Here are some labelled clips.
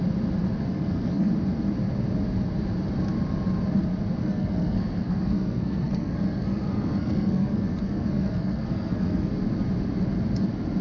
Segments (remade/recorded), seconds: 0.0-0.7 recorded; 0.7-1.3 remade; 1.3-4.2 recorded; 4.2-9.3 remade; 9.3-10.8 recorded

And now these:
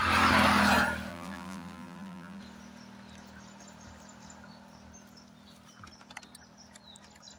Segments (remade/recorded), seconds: 0.0-1.1 recorded; 1.1-2.4 remade; 2.4-7.4 recorded

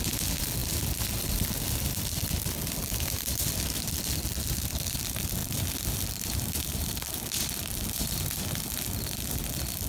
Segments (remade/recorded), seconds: 0.0-9.9 recorded

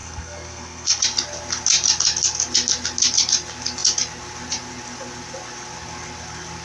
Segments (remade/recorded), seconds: 0.0-1.0 remade; 1.0-6.6 recorded

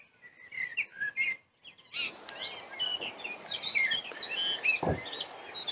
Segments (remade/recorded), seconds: 0.0-2.9 recorded; 2.9-4.1 remade; 4.1-5.7 recorded